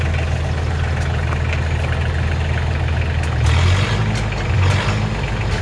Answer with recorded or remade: recorded